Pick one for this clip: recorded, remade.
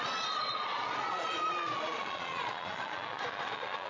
remade